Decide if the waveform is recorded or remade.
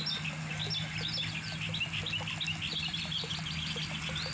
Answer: recorded